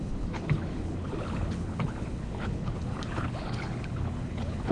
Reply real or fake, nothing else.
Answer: fake